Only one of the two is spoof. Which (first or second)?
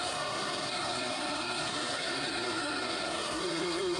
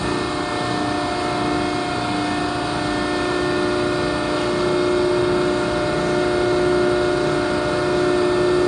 first